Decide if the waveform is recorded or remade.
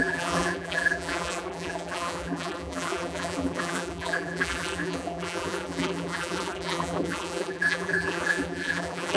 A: remade